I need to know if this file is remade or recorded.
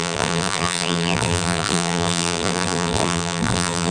remade